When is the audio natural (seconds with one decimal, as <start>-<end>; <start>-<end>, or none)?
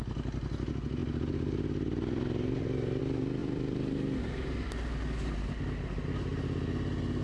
0.0-3.4; 4.2-7.2